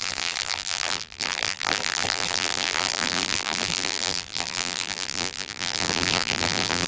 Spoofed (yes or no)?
yes